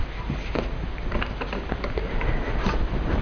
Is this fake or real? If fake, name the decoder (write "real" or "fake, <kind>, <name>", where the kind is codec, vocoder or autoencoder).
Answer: real